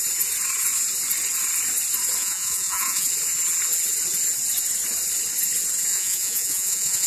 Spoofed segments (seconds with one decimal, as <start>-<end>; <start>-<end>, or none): 2.2-3.1; 5.9-7.1